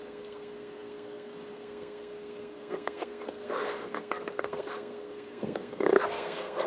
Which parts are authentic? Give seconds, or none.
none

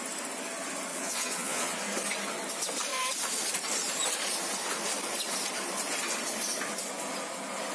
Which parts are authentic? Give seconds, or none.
0.0-0.9; 1.8-7.7

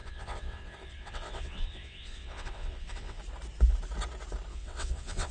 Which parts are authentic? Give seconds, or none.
3.2-4.5

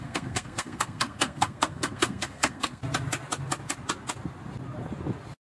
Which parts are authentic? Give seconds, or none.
2.8-5.5

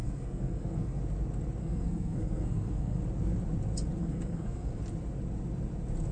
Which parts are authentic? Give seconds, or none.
1.0-1.6; 3.0-4.0; 4.8-6.1

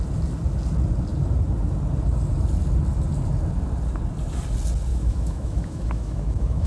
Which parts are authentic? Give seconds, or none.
0.0-4.9

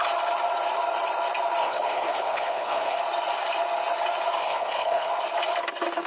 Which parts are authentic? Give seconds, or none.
0.0-1.6; 3.0-4.4; 5.1-6.1

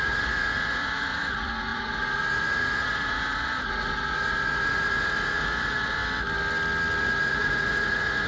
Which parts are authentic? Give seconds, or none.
6.0-7.0